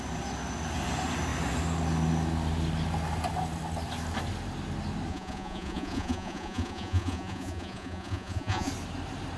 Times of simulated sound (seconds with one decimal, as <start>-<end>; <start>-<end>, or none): 5.1-8.7

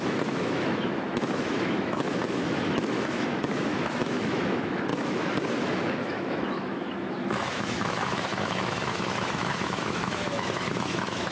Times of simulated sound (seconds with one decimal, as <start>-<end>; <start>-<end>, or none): 0.0-11.3

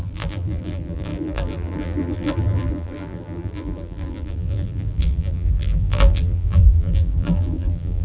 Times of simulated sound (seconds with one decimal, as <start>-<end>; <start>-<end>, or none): 0.0-8.0

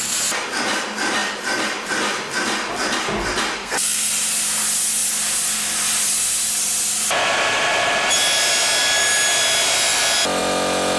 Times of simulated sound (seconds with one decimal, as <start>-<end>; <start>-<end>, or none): 3.6-4.1

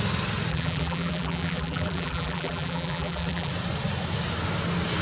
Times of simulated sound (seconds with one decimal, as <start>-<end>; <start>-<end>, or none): 0.5-3.5

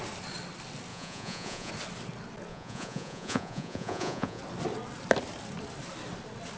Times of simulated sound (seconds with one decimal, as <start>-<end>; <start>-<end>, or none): 0.9-1.7; 2.5-4.4

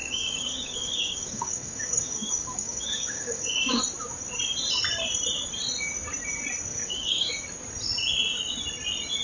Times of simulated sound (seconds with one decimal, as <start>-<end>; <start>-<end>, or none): 0.0-3.8; 6.7-7.3